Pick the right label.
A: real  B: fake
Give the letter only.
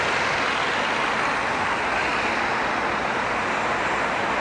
A